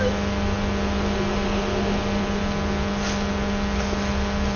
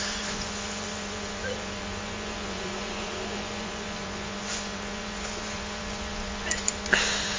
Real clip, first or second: first